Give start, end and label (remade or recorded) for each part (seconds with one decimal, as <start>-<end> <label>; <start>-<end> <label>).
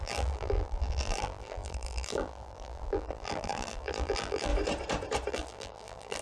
0.0-4.5 remade; 4.5-5.3 recorded; 5.3-6.2 remade